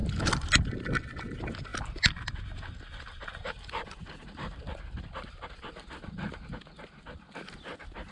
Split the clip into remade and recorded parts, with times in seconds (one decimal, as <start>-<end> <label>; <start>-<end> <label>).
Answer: 0.0-8.1 recorded